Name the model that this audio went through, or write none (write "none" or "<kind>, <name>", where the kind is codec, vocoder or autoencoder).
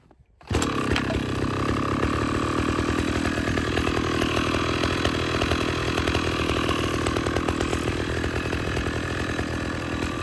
none